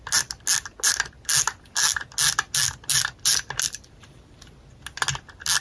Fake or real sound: real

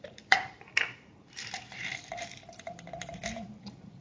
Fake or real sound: fake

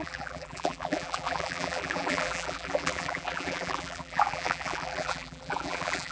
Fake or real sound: fake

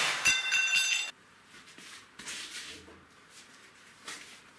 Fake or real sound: fake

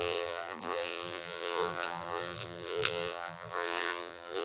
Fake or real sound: fake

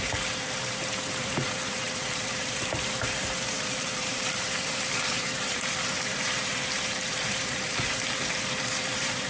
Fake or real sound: fake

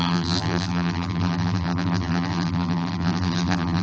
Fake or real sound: fake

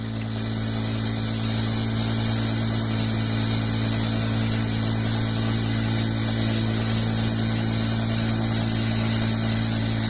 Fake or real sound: real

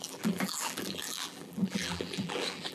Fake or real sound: fake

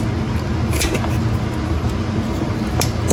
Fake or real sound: real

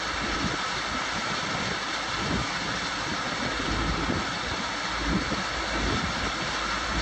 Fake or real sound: fake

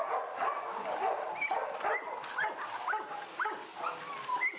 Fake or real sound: real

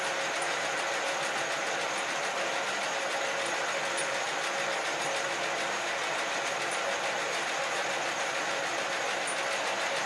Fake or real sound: real